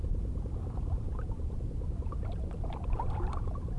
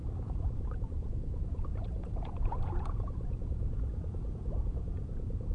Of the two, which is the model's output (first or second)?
second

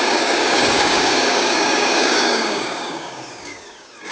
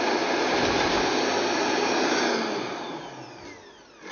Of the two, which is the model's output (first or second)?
first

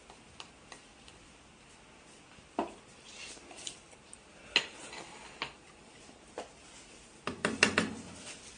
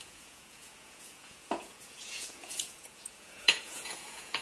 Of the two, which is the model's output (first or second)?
second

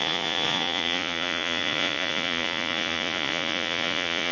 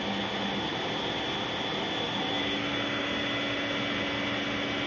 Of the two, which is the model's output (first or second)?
first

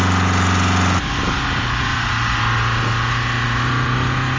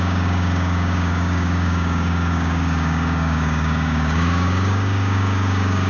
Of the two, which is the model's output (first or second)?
second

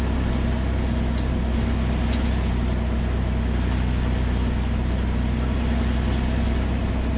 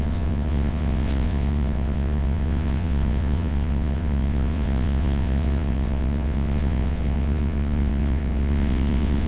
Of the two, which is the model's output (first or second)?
second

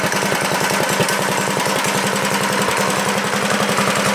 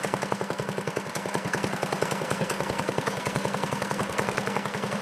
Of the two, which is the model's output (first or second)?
second